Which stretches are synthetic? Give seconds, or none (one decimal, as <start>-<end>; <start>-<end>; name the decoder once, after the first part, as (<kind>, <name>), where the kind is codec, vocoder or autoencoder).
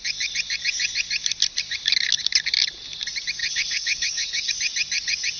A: 3.4-4.5 (codec, HILCodec)